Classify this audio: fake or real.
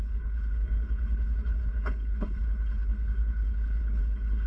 fake